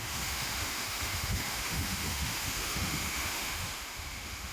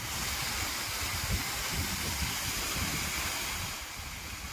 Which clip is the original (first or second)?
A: second